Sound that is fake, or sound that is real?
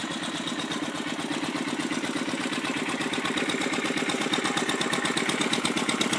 real